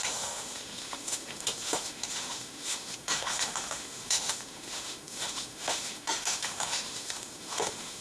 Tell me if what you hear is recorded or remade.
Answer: remade